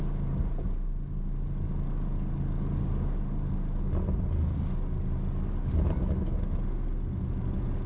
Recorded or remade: recorded